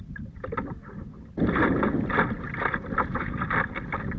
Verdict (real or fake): real